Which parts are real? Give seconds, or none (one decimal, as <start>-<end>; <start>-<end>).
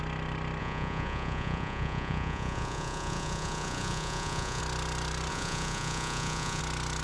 0.0-0.6; 4.6-5.3; 6.6-7.0